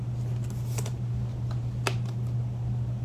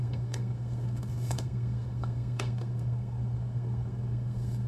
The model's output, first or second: second